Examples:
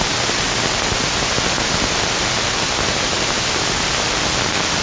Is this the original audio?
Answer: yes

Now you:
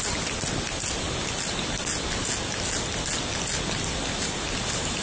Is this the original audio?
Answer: yes